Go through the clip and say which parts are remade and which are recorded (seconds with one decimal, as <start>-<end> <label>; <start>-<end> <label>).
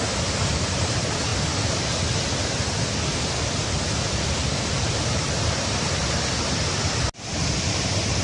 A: 0.0-1.3 remade; 1.3-4.6 recorded; 4.6-6.0 remade; 6.0-7.3 recorded; 7.3-8.2 remade